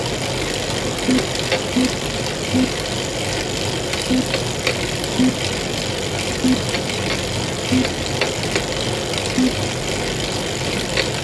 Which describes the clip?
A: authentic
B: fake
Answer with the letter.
A